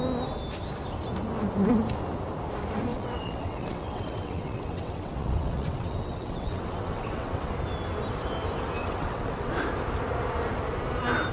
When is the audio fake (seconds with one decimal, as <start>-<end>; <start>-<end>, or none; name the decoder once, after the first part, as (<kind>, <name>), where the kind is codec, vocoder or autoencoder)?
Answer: 2.9-7.5 (vocoder, WaveNeXt); 8.8-9.5

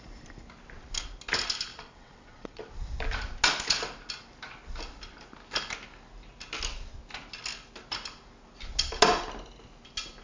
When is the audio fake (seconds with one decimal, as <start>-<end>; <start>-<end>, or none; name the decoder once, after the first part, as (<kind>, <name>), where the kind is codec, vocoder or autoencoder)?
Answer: 1.7-2.7 (vocoder, WaveNeXt)

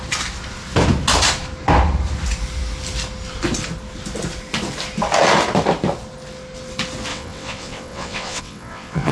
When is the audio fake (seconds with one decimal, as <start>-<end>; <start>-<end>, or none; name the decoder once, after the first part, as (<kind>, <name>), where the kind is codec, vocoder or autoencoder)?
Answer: 7.1-9.1 (vocoder, WaveNeXt)

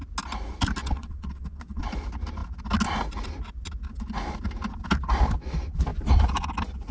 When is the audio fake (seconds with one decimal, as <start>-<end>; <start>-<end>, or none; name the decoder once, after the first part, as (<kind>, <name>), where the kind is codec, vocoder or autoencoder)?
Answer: 0.8-1.8 (vocoder, WaveNeXt)